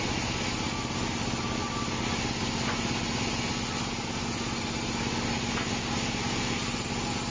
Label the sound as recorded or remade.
recorded